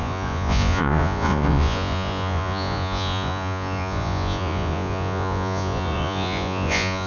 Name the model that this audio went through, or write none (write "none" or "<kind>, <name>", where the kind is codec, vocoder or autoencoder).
vocoder, Vocos